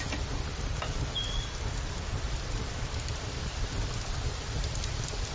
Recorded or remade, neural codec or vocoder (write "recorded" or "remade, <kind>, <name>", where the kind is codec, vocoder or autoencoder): remade, vocoder, BigVGAN v2